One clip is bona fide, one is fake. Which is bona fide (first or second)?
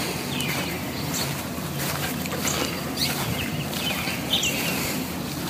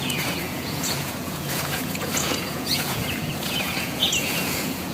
first